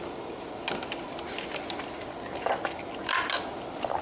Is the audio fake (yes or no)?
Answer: no